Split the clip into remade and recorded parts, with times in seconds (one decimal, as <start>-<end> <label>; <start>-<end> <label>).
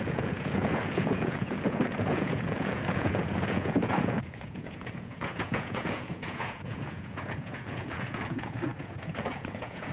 0.0-9.9 remade